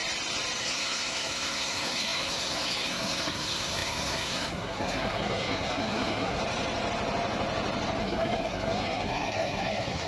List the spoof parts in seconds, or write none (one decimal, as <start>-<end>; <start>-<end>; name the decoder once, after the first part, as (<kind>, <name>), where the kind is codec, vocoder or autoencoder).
0.6-6.4 (codec, SNAC); 8.0-10.1